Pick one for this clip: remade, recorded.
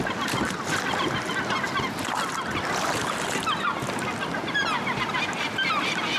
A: recorded